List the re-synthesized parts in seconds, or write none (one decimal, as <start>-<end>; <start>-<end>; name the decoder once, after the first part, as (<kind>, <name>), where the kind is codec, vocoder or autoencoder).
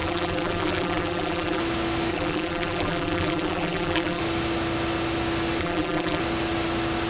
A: 0.0-1.6 (vocoder, BigVGAN v2); 2.1-4.2; 5.6-6.2